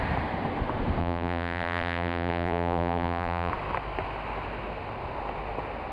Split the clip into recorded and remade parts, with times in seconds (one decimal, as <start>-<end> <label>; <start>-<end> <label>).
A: 0.0-1.0 recorded; 1.0-3.5 remade; 3.5-5.9 recorded